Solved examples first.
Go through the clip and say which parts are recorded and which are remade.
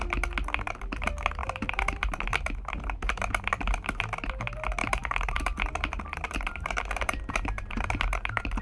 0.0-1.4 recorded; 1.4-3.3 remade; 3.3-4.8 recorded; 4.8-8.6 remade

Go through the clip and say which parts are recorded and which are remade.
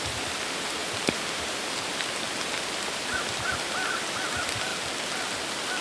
0.0-4.7 remade; 4.7-5.8 recorded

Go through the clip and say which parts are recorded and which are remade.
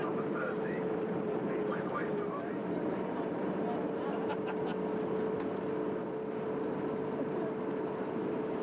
0.0-4.7 remade; 4.7-7.9 recorded; 7.9-8.6 remade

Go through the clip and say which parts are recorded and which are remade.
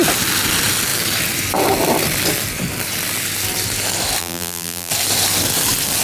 0.0-4.2 recorded; 4.2-4.9 remade; 4.9-6.0 recorded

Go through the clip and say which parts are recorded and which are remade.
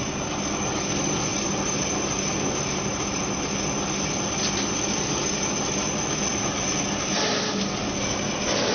0.0-1.3 recorded; 1.3-3.2 remade; 3.2-6.3 recorded; 6.3-7.2 remade; 7.2-8.7 recorded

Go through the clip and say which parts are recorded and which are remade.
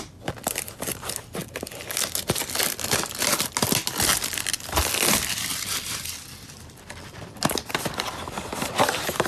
0.0-5.4 recorded; 5.4-8.3 remade; 8.3-9.3 recorded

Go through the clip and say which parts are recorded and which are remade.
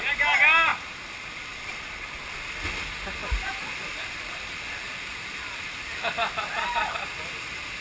0.0-0.7 recorded; 0.7-2.6 remade; 2.6-3.2 recorded; 3.2-5.8 remade; 5.8-7.8 recorded